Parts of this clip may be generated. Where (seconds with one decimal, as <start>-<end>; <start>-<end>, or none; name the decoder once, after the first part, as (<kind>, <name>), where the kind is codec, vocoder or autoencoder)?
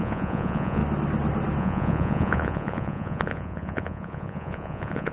0.0-0.8 (vocoder, Vocos); 1.6-5.1